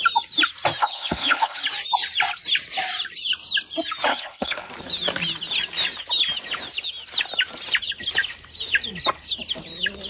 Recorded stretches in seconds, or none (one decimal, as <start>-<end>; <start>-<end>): 0.0-0.8; 1.6-4.1; 4.7-10.1

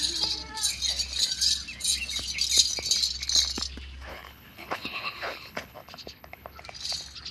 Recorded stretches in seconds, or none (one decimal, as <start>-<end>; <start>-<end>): 0.0-4.1; 6.6-7.3

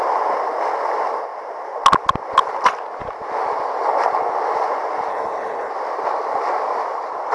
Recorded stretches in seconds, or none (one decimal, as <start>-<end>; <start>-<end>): 0.0-5.1; 5.7-7.3

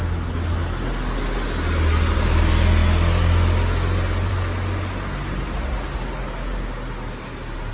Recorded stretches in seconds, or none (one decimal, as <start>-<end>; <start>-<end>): 0.0-7.7

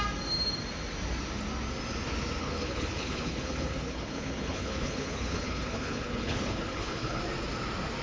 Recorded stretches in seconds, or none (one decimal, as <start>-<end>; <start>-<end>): 0.0-2.4; 7.2-8.0

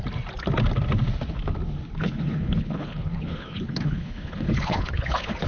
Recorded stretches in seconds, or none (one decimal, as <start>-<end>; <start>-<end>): 0.0-2.0

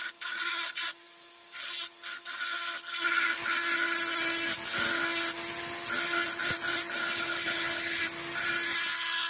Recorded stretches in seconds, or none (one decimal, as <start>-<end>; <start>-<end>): 0.0-7.0; 8.0-9.3

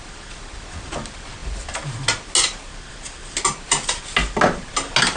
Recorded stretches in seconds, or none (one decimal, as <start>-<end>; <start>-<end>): 0.0-5.2